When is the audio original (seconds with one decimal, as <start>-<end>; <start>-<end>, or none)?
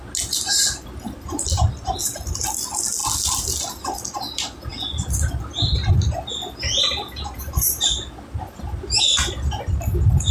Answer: 0.0-10.3